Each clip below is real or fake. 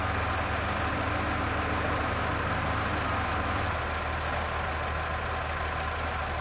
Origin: real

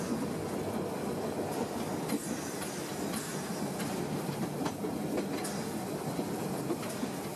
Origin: real